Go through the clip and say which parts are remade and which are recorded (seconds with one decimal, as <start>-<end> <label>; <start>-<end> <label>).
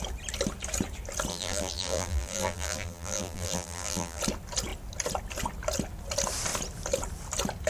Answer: 0.0-1.3 recorded; 1.3-4.2 remade; 4.2-7.7 recorded